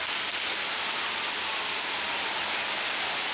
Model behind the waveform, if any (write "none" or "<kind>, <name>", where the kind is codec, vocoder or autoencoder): none